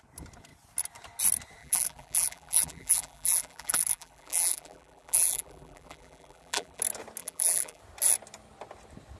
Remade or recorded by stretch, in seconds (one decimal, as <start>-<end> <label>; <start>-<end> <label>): 0.0-1.6 recorded; 1.6-6.8 remade; 6.8-7.2 recorded; 7.2-7.8 remade; 7.8-9.2 recorded